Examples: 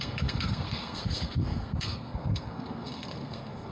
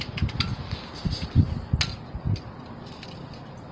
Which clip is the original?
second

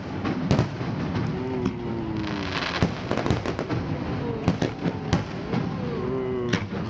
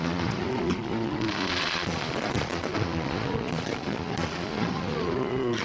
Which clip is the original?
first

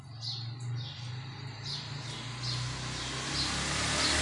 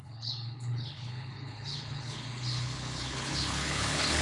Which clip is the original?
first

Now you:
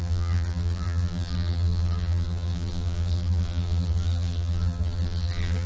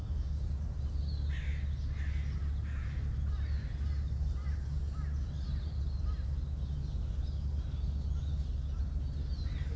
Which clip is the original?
second